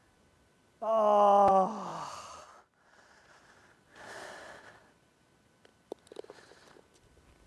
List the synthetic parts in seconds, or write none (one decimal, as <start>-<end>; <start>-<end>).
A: 0.0-1.5; 5.7-6.2